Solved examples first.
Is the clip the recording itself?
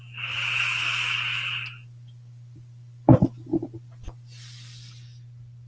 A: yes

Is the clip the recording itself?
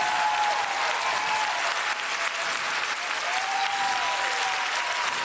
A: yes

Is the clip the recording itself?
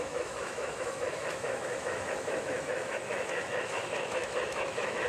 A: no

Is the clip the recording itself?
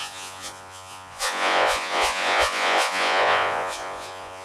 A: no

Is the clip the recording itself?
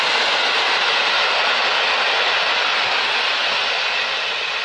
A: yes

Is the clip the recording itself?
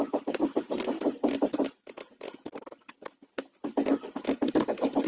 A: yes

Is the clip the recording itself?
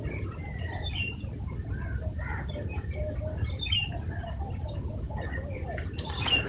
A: no